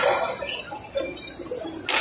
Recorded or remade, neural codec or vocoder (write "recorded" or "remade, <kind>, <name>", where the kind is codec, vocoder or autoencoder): recorded